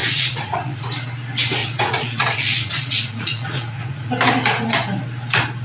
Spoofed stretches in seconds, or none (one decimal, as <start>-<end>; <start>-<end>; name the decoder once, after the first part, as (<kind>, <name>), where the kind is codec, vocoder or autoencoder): 0.0-0.8 (vocoder, Vocos); 1.6-4.1